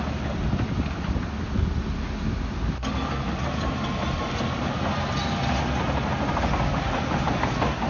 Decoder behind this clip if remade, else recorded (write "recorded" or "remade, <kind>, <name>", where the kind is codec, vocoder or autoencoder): recorded